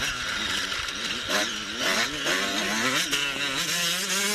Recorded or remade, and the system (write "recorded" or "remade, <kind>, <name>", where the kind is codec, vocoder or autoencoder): recorded